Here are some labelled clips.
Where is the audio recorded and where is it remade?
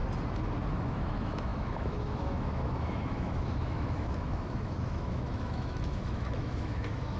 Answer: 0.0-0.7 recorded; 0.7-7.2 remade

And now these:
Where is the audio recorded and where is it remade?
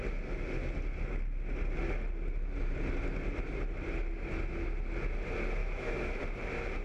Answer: 0.0-5.6 recorded; 5.6-6.2 remade; 6.2-6.8 recorded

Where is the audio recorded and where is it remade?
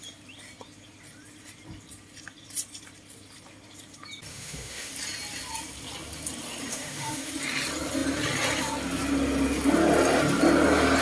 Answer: 0.0-4.3 recorded; 4.3-4.9 remade; 4.9-6.7 recorded; 6.7-7.3 remade; 7.3-11.0 recorded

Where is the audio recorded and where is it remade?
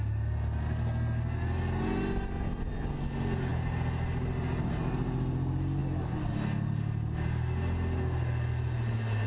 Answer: 0.0-9.3 recorded